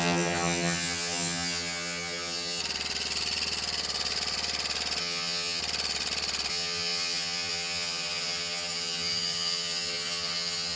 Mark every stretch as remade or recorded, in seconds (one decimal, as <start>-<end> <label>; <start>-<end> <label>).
0.0-2.6 remade; 2.6-5.0 recorded; 5.0-5.6 remade; 5.6-6.5 recorded; 6.5-10.8 remade